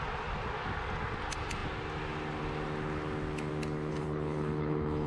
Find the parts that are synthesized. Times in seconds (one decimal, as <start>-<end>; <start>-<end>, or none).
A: 3.9-5.1